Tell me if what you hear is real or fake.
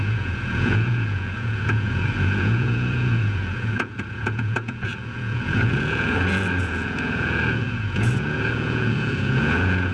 fake